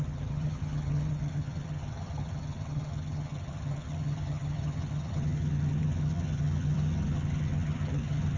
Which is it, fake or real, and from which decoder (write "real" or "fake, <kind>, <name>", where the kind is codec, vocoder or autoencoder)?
fake, vocoder, HiFi-GAN